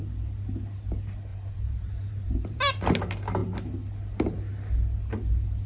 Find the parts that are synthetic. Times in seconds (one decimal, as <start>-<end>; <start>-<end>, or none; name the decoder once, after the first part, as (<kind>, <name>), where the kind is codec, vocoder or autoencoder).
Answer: 1.3-2.6 (vocoder, BigVGAN v2)